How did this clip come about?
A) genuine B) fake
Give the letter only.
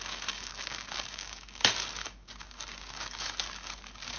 B